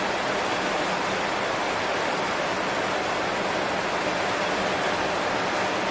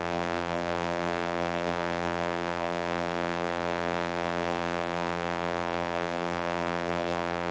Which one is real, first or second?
first